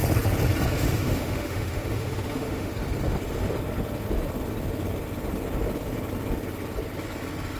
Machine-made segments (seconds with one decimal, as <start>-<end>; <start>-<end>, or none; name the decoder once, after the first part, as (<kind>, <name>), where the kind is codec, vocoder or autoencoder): 0.7-2.7 (autoencoder, DAC-VAE)

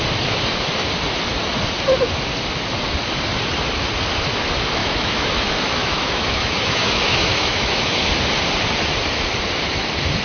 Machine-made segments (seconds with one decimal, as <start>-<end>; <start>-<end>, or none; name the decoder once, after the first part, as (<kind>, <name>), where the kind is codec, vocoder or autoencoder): 4.8-8.1 (autoencoder, DAC-VAE)

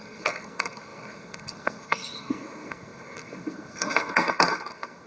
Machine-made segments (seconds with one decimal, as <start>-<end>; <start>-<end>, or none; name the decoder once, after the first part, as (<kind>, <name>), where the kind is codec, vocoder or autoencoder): 0.0-5.1 (codec, SNAC)